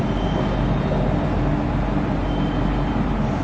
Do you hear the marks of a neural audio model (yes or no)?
no